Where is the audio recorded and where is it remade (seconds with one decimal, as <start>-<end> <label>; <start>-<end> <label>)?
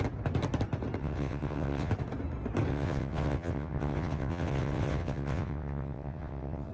0.0-1.0 recorded; 1.0-1.9 remade; 1.9-2.7 recorded; 2.7-6.7 remade